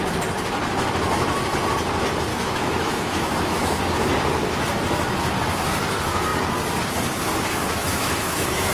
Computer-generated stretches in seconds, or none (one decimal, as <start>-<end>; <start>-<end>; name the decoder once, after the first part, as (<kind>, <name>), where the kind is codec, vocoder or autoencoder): 2.3-3.8 (autoencoder, DAC-VAE); 7.8-8.7